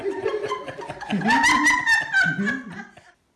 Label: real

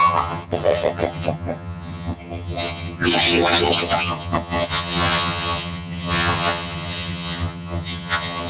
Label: fake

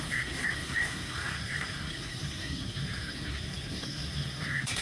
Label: fake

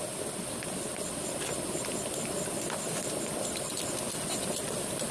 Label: real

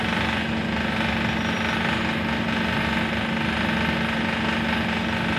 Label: real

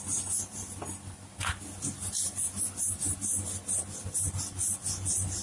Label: real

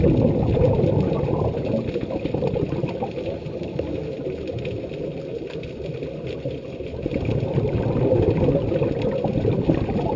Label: real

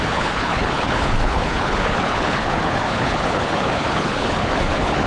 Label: fake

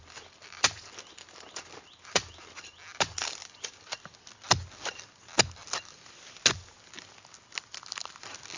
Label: real